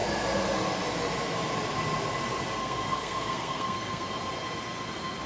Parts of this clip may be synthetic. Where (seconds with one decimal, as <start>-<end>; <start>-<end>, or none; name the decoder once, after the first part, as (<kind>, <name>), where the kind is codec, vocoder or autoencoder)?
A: 2.6-4.1 (codec, SNAC)